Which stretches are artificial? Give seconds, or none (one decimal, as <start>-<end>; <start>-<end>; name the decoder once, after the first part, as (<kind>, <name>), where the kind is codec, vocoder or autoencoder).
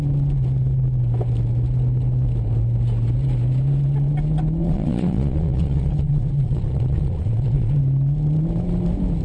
4.6-7.8 (vocoder, Vocos)